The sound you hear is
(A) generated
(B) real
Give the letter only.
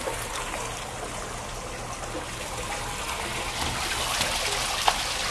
B